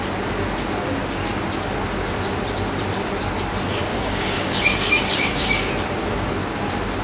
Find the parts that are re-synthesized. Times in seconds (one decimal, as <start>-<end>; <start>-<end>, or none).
3.9-5.7